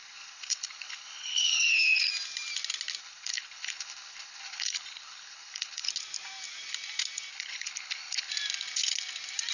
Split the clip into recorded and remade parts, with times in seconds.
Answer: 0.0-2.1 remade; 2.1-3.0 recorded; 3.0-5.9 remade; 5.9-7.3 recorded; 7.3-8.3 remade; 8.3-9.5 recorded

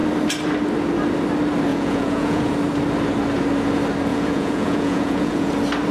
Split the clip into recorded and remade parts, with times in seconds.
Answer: 0.0-1.7 recorded; 1.7-2.5 remade; 2.5-4.1 recorded; 4.1-5.5 remade; 5.5-5.9 recorded

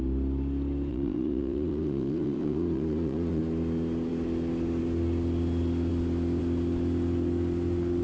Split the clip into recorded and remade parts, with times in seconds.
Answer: 0.0-0.9 recorded; 0.9-3.4 remade; 3.4-8.0 recorded